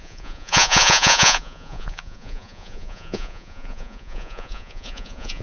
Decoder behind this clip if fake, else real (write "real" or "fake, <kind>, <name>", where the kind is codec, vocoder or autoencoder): fake, vocoder, Vocos